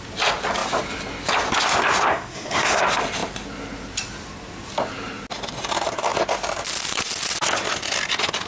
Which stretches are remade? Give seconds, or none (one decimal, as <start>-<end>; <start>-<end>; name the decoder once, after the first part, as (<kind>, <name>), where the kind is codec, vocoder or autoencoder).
2.1-2.8 (codec, SNAC)